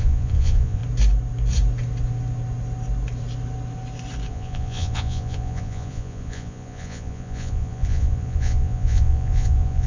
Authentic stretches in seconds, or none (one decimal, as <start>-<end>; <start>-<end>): 0.8-4.3